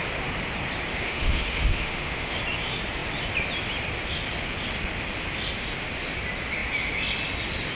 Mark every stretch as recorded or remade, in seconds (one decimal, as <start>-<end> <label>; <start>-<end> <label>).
0.0-0.9 recorded; 0.9-2.4 remade; 2.4-7.7 recorded